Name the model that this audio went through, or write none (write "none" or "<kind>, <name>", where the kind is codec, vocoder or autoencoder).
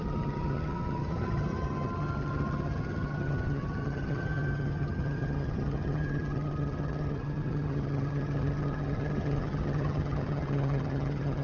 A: vocoder, HiFi-GAN